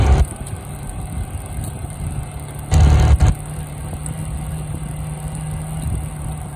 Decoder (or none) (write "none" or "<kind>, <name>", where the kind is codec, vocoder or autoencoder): none